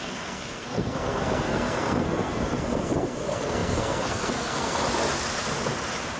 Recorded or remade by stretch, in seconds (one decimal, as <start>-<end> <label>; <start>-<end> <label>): 0.0-4.8 remade; 4.8-6.2 recorded